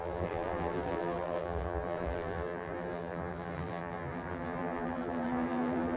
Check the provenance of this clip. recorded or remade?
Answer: remade